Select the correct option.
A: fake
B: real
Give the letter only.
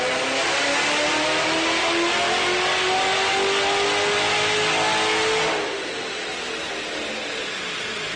B